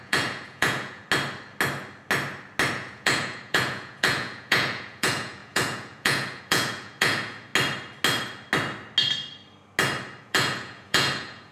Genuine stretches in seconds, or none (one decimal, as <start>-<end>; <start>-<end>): 1.0-2.7; 7.5-10.2